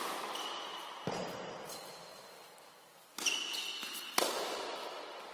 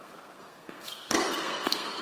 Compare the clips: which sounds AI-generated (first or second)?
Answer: second